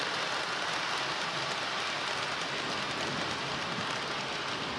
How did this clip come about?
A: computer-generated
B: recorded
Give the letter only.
B